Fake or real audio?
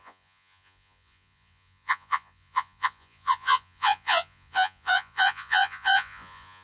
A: fake